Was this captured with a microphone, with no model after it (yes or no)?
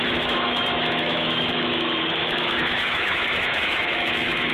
no